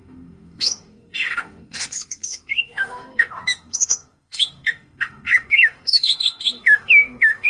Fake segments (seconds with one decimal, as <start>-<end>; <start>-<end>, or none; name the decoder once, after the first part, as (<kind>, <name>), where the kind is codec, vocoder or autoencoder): 0.0-7.5 (autoencoder, DAC-VAE)